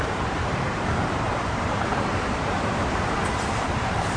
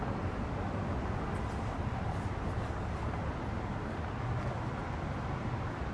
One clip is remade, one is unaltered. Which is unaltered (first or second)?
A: second